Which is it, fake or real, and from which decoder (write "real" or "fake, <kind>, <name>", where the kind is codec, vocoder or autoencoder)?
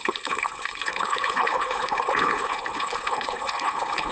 fake, codec, HILCodec